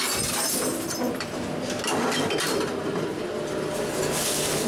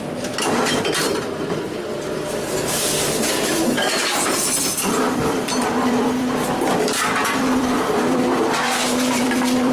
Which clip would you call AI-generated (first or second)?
second